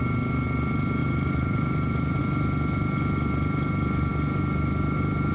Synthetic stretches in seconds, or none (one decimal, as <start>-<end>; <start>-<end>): 1.0-2.2